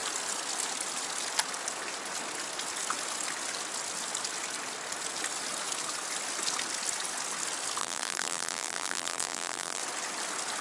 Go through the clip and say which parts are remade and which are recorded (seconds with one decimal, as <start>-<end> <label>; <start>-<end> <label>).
0.0-7.8 recorded; 7.8-9.8 remade; 9.8-10.6 recorded